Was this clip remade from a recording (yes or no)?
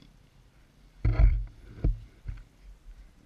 no